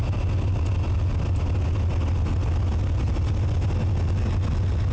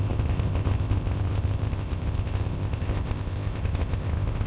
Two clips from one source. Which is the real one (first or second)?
first